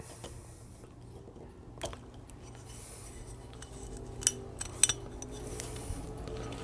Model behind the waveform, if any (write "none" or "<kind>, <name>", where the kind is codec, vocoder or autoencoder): none